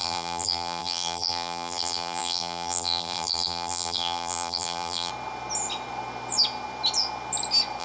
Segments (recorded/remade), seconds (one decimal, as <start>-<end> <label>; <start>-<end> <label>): 0.0-5.1 remade; 5.1-7.8 recorded